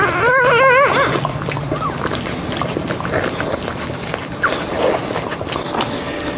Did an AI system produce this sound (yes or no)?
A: no